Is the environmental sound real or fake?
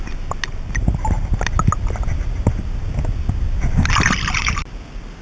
real